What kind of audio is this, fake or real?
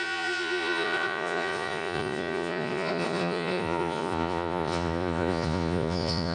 fake